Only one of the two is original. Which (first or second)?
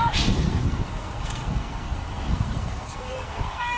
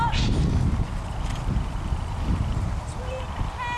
second